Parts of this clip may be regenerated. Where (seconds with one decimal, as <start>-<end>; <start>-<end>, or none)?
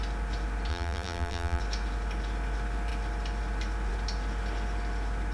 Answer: 0.7-1.6